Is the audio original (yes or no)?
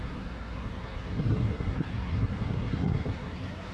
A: no